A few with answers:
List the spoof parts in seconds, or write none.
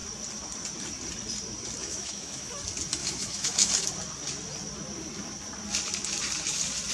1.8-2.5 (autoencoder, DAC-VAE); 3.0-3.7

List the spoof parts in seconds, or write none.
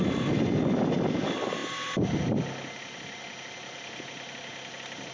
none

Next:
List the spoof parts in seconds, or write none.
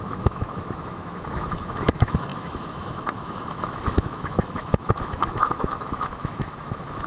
0.0-7.1 (autoencoder, DAC-VAE)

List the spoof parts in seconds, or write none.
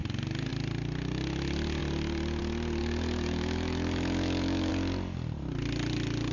2.8-4.7 (autoencoder, DAC-VAE)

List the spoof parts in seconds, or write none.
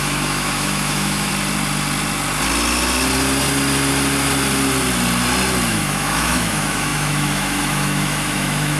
0.0-1.3 (autoencoder, DAC-VAE); 5.7-8.8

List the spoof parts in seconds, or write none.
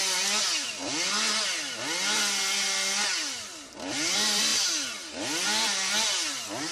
none